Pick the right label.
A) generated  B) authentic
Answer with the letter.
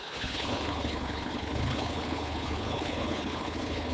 A